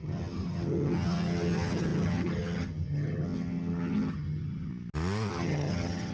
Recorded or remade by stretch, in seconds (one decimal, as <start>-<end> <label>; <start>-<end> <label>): 0.0-4.7 remade; 4.7-5.3 recorded; 5.3-6.1 remade

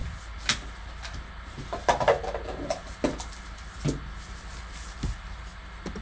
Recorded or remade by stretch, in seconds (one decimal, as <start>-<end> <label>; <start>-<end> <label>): 0.0-6.0 recorded

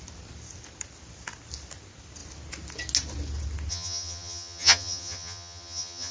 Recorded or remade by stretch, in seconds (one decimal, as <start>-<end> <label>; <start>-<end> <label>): 0.0-3.7 recorded; 3.7-6.1 remade

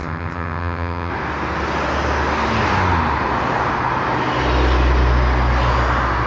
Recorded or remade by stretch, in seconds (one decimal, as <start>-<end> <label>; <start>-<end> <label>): 0.0-1.1 remade; 1.1-6.3 recorded

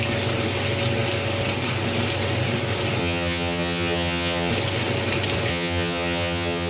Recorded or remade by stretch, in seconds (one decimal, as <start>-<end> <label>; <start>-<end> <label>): 0.0-3.0 recorded; 3.0-4.5 remade; 4.5-5.5 recorded; 5.5-6.7 remade

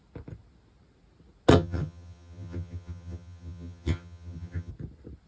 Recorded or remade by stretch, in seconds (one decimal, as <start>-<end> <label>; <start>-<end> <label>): 0.0-1.5 recorded; 1.5-4.7 remade; 4.7-5.3 recorded

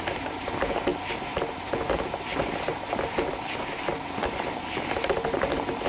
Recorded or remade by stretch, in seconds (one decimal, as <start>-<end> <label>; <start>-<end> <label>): 0.0-5.9 recorded